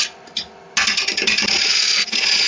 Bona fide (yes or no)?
yes